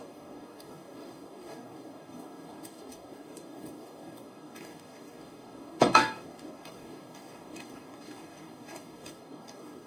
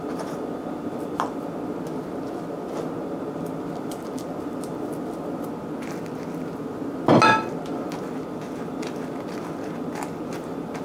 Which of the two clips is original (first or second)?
second